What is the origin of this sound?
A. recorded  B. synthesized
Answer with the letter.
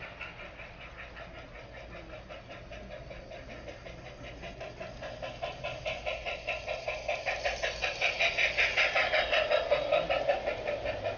A